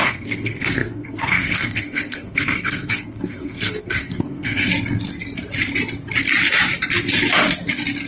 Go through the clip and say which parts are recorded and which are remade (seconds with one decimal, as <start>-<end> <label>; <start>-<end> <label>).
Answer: 0.0-4.7 remade; 4.7-8.1 recorded